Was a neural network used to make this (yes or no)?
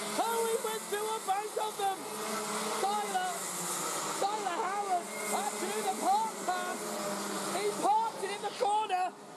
no